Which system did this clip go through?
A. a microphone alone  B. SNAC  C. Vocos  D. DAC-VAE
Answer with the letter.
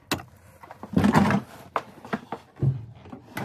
A